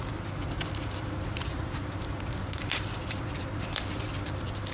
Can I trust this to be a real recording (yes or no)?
no